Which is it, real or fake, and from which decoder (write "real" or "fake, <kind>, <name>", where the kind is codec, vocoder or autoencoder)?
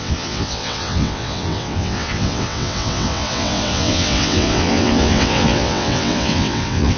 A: fake, vocoder, WaveNeXt